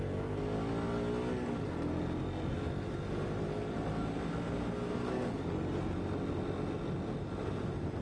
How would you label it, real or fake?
real